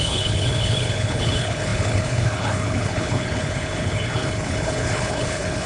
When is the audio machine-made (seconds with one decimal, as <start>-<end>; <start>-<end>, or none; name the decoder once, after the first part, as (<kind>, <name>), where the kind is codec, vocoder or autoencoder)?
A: 0.0-5.7 (codec, HILCodec)